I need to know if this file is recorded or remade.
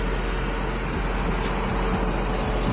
recorded